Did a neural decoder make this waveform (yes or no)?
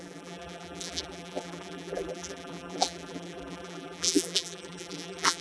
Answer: yes